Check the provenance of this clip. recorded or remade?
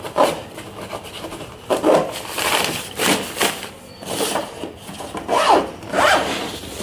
remade